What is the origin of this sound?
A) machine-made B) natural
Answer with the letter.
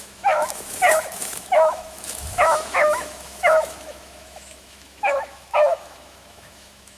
A